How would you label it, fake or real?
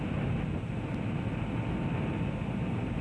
real